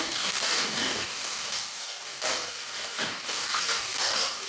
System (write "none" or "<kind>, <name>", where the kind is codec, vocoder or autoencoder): codec, DAC